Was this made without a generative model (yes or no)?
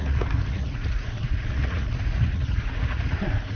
no